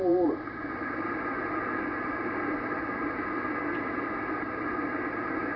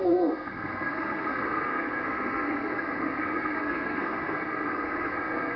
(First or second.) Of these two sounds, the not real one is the second